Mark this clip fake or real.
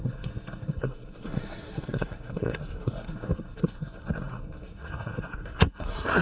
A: fake